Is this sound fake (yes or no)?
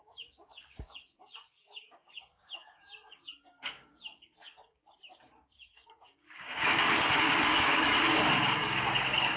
yes